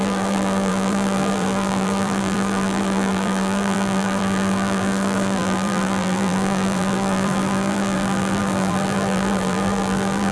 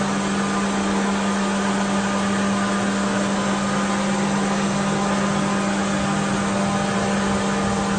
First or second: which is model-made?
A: first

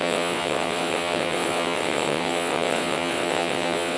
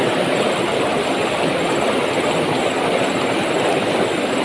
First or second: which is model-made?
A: first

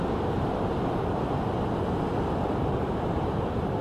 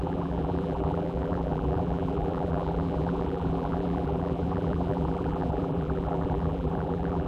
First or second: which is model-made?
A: second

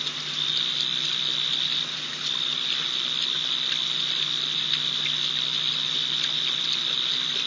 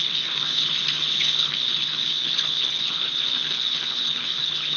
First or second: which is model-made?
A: second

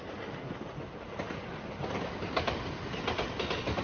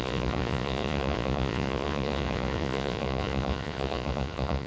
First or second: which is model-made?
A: second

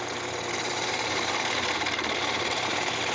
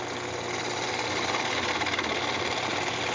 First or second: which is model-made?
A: first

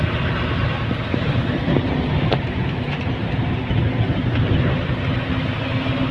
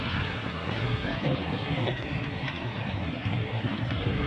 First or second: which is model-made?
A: second